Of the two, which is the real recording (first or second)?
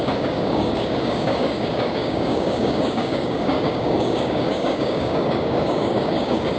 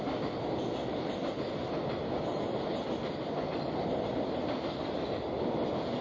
second